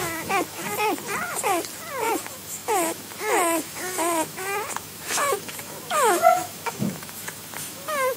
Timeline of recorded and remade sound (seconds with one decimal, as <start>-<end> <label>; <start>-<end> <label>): 0.0-0.6 remade; 0.6-2.1 recorded; 2.1-8.2 remade

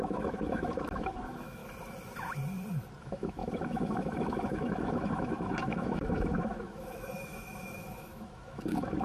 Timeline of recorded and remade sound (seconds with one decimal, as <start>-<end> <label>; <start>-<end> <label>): 0.0-1.6 remade; 1.6-3.0 recorded; 3.0-9.0 remade

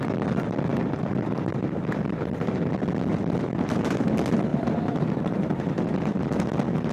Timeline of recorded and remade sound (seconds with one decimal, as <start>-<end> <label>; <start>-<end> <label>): 0.0-0.7 recorded; 0.7-2.7 remade; 2.7-3.1 recorded; 3.1-4.1 remade; 4.1-4.5 recorded; 4.5-6.9 remade

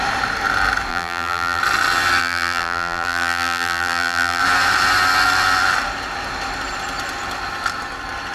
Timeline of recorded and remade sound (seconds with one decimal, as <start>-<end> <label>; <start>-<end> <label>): 0.0-0.9 recorded; 0.9-1.6 remade; 1.6-2.2 recorded; 2.2-4.4 remade; 4.4-8.3 recorded

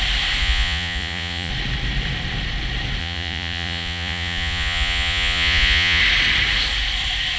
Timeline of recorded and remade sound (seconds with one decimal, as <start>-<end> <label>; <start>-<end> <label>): 0.0-0.4 recorded; 0.4-1.5 remade; 1.5-3.0 recorded; 3.0-6.0 remade; 6.0-7.4 recorded

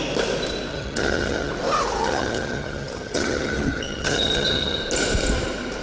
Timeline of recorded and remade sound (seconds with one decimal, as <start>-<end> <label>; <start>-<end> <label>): 0.0-0.7 recorded; 0.7-1.5 remade; 1.5-2.0 recorded; 2.0-4.8 remade; 4.8-5.8 recorded

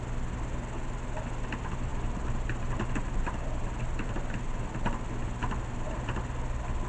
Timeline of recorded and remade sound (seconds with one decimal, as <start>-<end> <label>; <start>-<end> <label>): 0.0-6.9 recorded

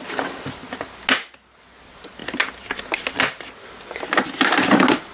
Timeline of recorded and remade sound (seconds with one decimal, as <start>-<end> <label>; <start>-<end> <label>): 0.0-5.1 recorded